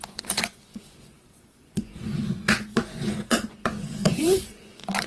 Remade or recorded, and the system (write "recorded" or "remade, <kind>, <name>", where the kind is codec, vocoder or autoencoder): remade, vocoder, Vocos